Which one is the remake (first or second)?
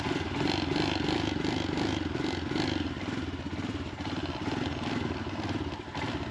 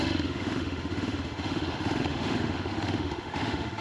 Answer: second